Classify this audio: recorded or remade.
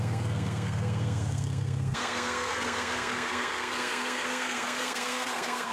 remade